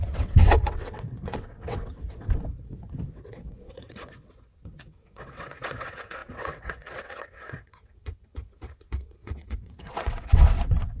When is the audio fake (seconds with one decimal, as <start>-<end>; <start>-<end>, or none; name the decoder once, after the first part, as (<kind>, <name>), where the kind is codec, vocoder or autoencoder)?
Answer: 0.0-11.0 (vocoder, WaveNeXt)